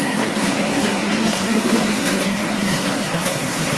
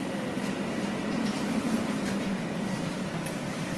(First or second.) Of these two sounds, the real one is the second